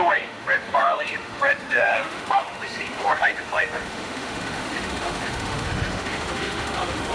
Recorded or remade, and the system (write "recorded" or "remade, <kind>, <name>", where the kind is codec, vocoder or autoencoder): remade, autoencoder, DAC-VAE